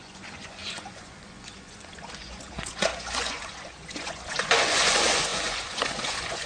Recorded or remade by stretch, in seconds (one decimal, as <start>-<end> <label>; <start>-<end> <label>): 0.0-6.5 remade